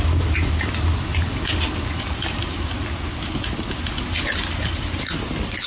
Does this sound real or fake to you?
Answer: real